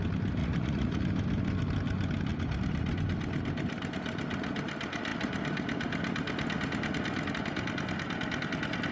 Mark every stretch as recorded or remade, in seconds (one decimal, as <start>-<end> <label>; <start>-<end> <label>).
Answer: 0.0-0.4 recorded; 0.4-1.0 remade; 1.0-8.9 recorded